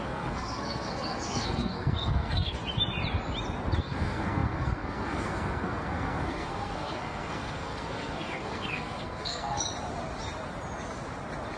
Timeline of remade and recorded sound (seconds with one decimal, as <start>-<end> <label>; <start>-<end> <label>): 0.0-2.6 remade; 2.6-3.8 recorded; 3.8-9.7 remade; 9.7-11.6 recorded